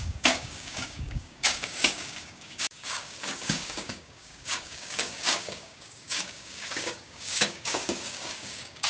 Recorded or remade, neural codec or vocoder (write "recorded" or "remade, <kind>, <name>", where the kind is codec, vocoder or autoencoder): remade, codec, DAC